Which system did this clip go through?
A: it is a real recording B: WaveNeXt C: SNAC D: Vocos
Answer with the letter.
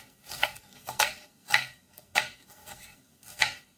C